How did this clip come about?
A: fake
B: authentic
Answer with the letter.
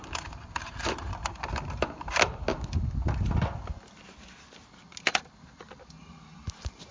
B